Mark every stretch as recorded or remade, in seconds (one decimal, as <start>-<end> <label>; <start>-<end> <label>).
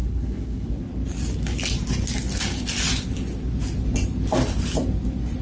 0.0-0.7 remade; 0.7-5.4 recorded